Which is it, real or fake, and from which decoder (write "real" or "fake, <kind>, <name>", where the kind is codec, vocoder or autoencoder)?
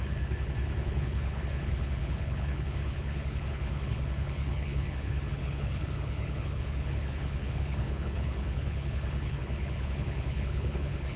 fake, codec, HILCodec